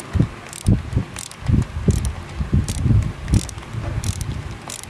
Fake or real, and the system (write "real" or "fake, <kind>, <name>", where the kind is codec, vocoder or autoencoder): real